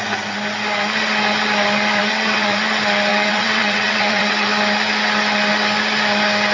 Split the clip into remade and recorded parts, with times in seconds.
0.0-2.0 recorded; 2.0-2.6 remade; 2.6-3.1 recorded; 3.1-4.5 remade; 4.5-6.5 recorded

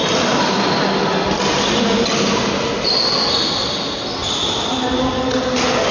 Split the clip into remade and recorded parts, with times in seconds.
0.0-5.9 recorded